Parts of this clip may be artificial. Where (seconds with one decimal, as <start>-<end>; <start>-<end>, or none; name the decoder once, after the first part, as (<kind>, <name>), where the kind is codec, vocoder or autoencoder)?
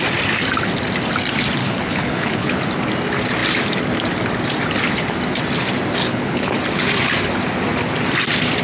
1.6-2.6 (codec, HILCodec); 6.1-6.6